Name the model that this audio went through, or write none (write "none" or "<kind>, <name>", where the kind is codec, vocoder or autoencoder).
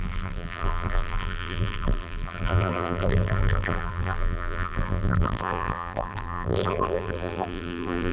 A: vocoder, BigVGAN v2